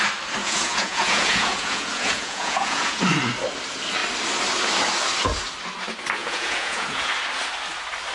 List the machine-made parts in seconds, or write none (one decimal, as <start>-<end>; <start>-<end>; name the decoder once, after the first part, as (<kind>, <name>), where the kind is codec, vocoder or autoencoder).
0.4-3.0 (vocoder, Vocos); 6.2-7.1